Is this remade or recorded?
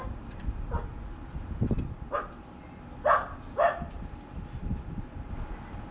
recorded